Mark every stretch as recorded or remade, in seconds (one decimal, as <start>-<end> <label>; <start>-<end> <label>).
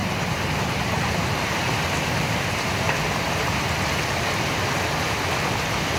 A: 0.0-3.6 remade; 3.6-6.0 recorded